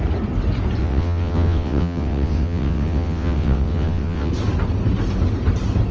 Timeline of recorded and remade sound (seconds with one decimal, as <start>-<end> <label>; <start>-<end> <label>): 0.0-0.8 recorded; 0.8-4.3 remade; 4.3-5.9 recorded